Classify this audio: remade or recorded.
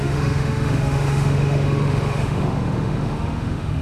remade